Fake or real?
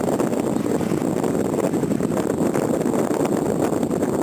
real